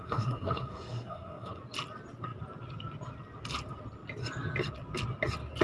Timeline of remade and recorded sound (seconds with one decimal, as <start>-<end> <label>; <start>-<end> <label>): 0.0-1.6 remade; 1.6-5.6 recorded